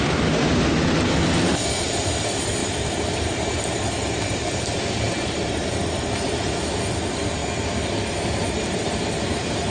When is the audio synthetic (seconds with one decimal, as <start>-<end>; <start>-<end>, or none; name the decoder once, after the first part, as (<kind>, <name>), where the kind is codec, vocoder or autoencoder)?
2.6-6.1 (vocoder, BigVGAN v2)

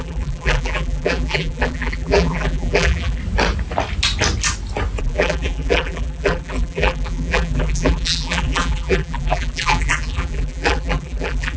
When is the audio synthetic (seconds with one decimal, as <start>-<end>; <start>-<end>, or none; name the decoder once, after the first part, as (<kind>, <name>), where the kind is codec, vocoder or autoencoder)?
0.0-3.2 (vocoder, BigVGAN v2); 5.0-11.6